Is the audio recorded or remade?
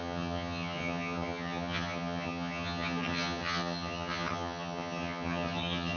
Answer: remade